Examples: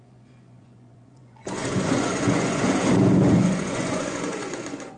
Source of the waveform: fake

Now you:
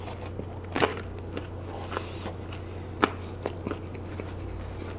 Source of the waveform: real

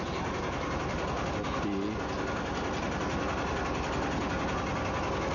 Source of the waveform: real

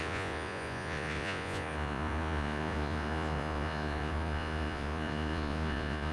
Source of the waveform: fake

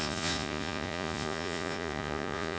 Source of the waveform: fake